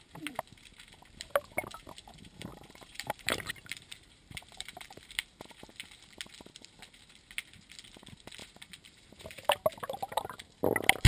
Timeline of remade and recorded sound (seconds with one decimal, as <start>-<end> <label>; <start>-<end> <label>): 0.0-2.5 recorded; 2.5-5.2 remade; 5.2-8.4 recorded; 8.4-9.6 remade; 9.6-11.1 recorded